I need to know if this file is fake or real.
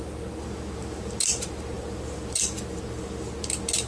real